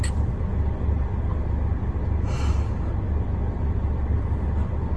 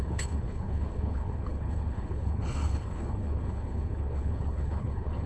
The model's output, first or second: second